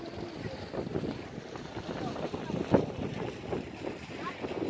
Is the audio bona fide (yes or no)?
yes